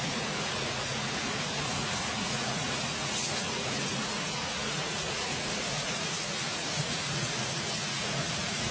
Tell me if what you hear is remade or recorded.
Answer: remade